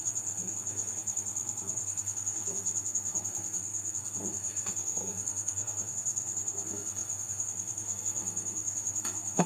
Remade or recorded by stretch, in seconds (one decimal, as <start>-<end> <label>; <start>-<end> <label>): 0.0-9.5 remade